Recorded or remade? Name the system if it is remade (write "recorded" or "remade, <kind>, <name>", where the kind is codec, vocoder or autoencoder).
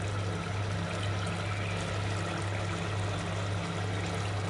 recorded